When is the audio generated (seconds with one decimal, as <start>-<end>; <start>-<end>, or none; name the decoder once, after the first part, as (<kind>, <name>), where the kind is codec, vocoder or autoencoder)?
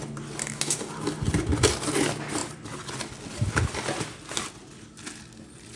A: 0.4-0.9 (codec, DAC)